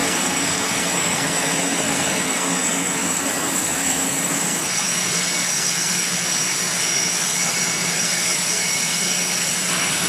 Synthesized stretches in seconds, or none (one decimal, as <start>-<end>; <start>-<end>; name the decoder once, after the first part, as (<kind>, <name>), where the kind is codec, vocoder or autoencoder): 0.0-10.1 (codec, SNAC)

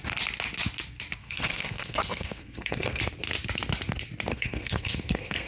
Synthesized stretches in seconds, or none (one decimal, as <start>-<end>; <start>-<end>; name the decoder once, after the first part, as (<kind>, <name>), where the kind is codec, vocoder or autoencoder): 1.2-3.0 (codec, SNAC); 4.3-5.5

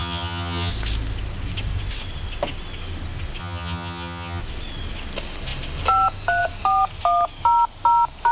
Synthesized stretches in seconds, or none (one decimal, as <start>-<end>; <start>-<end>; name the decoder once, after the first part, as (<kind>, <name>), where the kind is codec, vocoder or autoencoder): 0.0-0.7 (vocoder, HiFi-GAN); 3.4-4.4

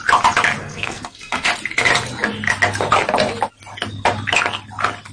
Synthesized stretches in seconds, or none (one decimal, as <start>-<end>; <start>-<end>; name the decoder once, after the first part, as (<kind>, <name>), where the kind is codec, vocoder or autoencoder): 0.6-1.5 (codec, SNAC)